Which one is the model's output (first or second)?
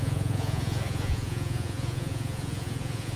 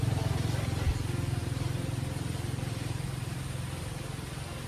first